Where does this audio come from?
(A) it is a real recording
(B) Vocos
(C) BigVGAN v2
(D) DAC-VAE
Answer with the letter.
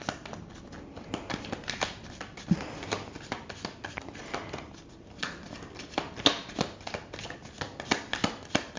A